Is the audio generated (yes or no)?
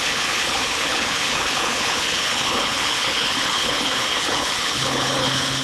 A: yes